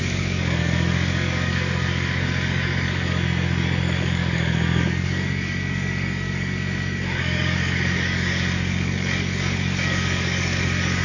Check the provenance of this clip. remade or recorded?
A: remade